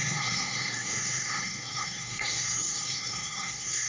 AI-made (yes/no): yes